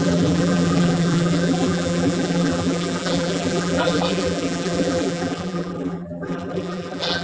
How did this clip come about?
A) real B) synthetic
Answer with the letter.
B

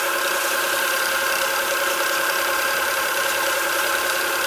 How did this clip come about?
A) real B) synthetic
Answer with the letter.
B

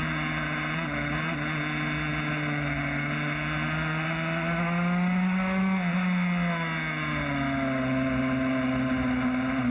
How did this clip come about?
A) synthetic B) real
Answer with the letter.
B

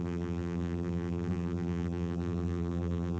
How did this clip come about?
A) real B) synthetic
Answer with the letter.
B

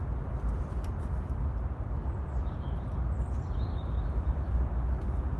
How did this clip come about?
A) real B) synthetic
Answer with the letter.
A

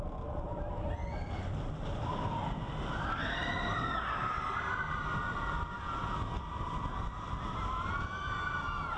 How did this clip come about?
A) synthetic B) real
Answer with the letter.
B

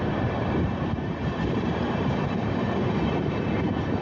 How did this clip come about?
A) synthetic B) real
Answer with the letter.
A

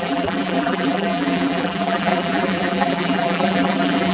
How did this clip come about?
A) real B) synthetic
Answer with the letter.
B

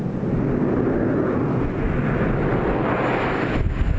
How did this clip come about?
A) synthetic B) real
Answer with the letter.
B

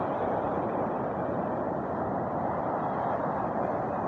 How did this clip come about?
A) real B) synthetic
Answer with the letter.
B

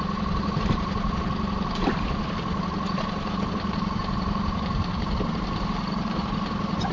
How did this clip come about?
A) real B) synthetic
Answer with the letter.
B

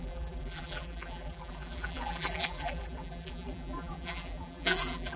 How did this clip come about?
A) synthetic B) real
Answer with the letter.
A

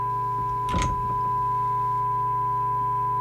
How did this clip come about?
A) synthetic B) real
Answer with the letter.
B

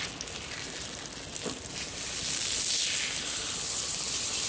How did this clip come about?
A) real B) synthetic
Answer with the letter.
A